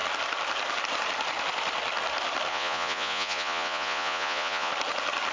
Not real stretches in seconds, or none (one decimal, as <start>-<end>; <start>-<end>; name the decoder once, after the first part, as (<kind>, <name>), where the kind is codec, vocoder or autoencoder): 2.5-4.7 (vocoder, Vocos)

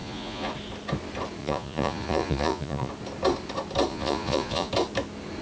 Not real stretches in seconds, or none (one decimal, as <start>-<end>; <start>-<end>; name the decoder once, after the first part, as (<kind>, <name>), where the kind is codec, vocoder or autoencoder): 0.0-0.5 (vocoder, Vocos); 1.4-2.9; 3.9-4.7

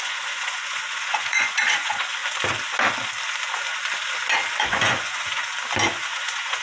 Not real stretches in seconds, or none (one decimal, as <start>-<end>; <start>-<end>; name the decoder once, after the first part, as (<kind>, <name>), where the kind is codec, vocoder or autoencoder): 0.0-2.2 (vocoder, Vocos); 4.6-5.4; 5.9-6.6

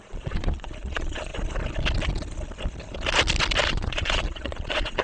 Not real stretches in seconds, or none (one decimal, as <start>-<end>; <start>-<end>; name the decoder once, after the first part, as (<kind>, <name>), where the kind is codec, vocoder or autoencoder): 0.0-1.3 (vocoder, Vocos); 3.7-5.0

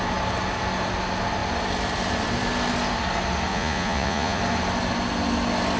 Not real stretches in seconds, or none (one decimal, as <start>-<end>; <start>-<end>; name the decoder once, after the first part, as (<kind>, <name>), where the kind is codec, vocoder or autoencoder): 3.5-4.4 (vocoder, Vocos)

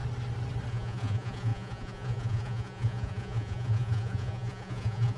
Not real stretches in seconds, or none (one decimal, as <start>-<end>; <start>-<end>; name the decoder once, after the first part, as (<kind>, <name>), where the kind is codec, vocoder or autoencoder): 0.7-5.2 (vocoder, Vocos)